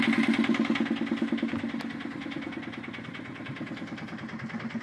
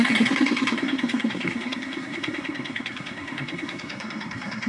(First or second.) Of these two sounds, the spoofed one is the second